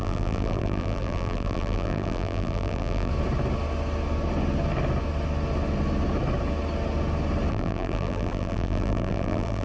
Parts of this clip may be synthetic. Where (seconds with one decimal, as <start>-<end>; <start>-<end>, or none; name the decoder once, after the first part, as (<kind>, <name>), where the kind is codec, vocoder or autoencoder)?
0.0-3.1 (vocoder, BigVGAN v2); 7.5-9.6